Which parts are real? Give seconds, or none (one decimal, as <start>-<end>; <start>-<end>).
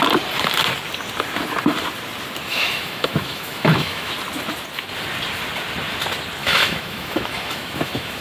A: 0.0-2.5; 4.1-6.4